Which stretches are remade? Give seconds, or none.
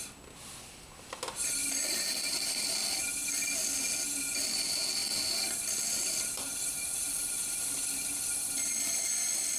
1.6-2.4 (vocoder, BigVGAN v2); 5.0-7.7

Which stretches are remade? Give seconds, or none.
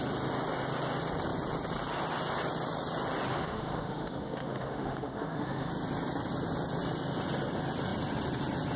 3.3-5.7 (autoencoder, DAC-VAE)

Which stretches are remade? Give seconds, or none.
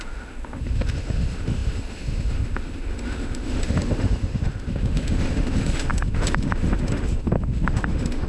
0.0-8.3 (autoencoder, DAC-VAE)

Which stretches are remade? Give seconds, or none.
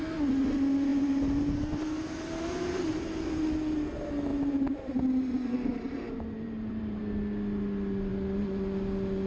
0.9-3.4 (vocoder, BigVGAN v2); 4.3-7.0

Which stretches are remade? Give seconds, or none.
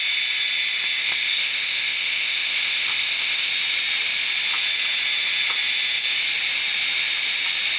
1.0-3.5 (codec, ZipCodec)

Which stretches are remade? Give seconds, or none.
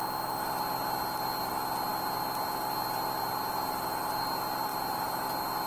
none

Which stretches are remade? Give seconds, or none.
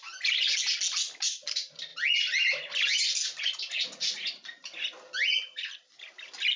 none